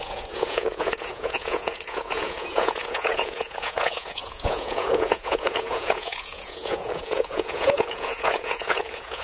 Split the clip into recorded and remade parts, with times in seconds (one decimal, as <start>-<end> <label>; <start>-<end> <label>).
0.0-9.2 remade